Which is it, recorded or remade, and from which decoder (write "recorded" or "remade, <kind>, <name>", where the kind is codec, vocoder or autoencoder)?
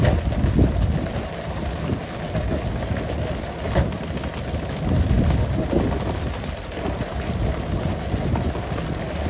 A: recorded